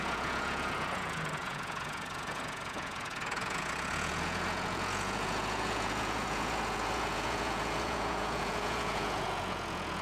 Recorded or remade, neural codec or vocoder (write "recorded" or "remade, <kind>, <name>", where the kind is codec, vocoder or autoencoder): remade, vocoder, Vocos